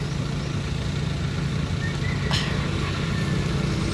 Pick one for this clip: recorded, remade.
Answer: recorded